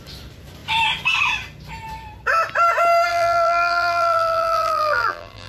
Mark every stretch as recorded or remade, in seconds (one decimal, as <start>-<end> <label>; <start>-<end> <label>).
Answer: 0.0-3.1 recorded; 3.1-5.5 remade